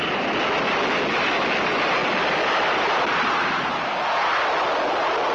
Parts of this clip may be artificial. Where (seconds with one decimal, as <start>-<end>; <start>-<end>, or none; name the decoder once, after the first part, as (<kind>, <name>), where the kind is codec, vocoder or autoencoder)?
none